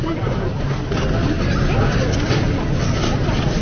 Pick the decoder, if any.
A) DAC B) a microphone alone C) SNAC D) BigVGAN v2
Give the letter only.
B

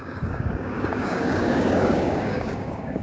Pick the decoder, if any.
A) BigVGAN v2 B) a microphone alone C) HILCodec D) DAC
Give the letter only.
D